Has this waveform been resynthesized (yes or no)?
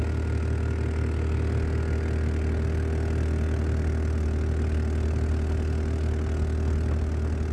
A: no